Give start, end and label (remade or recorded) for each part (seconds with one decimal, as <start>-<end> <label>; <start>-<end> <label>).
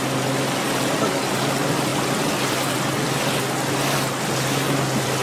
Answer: 0.0-5.2 recorded